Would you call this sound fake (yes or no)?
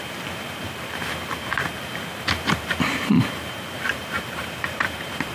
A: yes